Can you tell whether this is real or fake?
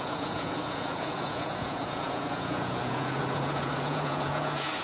fake